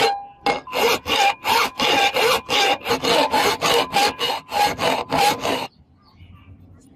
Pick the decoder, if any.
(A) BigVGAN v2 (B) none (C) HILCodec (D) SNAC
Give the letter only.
B